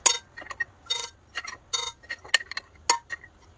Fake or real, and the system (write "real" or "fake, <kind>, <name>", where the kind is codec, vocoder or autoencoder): real